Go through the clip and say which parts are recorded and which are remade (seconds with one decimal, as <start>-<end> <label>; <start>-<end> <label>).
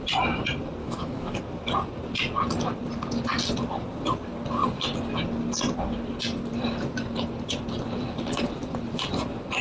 0.0-0.8 recorded; 0.8-1.4 remade; 1.4-9.6 recorded